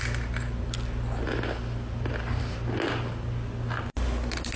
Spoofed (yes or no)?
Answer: no